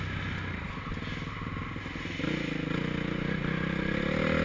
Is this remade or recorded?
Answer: recorded